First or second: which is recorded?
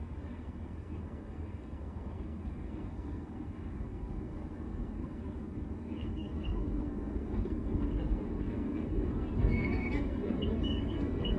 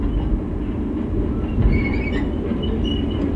second